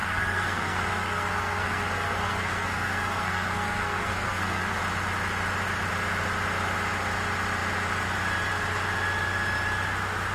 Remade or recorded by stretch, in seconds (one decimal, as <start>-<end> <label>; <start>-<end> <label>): 0.0-4.8 remade; 4.8-10.3 recorded